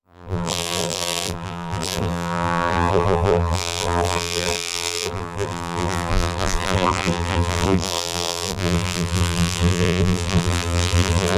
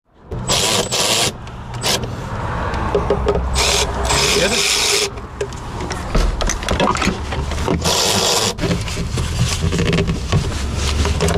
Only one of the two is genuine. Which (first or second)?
second